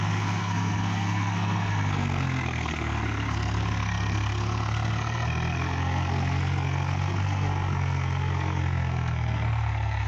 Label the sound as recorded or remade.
remade